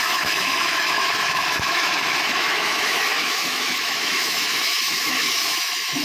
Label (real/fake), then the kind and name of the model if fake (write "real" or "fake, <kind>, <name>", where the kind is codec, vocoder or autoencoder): fake, autoencoder, DAC-VAE